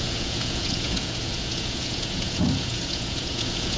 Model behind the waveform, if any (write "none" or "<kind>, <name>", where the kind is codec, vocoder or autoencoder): vocoder, Vocos